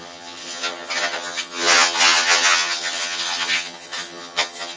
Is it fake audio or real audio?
fake